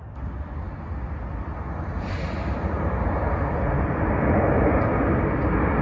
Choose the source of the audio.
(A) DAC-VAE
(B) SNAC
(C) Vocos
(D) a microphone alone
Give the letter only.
D